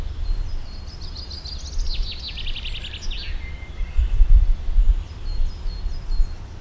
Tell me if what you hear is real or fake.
real